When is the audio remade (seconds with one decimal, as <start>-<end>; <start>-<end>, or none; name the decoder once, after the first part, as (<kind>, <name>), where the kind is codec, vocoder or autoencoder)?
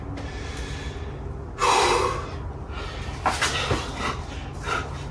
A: none